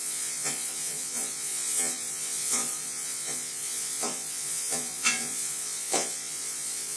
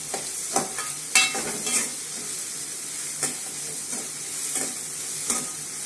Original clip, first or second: second